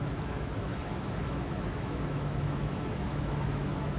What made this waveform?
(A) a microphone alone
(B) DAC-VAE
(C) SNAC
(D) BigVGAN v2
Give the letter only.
B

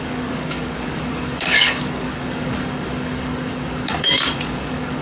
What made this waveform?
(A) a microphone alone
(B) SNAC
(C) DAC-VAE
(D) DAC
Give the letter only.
D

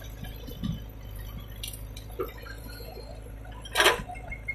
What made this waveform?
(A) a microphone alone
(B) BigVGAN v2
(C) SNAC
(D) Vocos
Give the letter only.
A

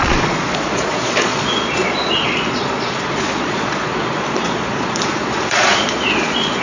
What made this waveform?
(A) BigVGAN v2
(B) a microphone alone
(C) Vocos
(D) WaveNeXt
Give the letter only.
C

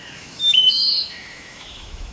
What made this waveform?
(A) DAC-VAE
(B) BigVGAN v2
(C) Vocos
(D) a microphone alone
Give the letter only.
A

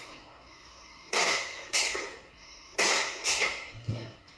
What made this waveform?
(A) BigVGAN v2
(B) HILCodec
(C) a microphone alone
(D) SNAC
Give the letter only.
D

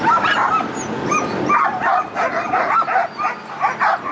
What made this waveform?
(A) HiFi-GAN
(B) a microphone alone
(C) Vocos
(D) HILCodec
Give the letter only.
B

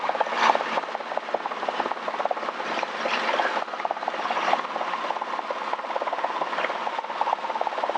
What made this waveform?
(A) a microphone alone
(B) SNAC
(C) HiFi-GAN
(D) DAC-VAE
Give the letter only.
A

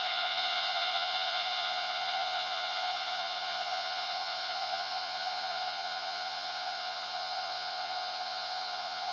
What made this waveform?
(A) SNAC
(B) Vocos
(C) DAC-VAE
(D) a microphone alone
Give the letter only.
B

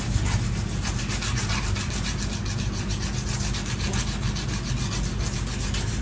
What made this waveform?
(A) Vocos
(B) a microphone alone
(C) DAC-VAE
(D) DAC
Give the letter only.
B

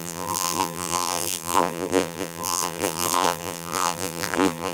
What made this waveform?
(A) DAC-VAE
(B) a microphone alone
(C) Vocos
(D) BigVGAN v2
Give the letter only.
D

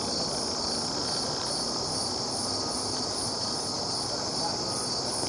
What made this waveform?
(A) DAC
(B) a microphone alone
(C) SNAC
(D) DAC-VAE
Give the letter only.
B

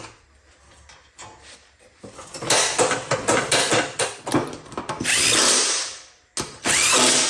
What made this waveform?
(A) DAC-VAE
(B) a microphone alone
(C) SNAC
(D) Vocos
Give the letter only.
B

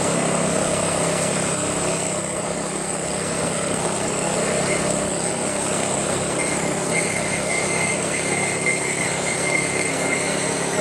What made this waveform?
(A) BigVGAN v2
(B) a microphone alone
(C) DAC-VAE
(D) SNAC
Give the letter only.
D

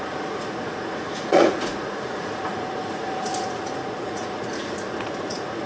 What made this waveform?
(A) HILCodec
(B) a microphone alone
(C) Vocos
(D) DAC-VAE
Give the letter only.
C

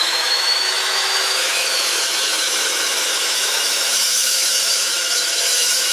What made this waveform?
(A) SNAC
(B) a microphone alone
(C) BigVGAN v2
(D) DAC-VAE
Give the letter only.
D